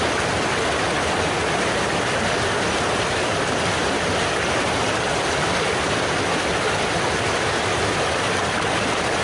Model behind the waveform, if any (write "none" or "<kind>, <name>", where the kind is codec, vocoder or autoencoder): none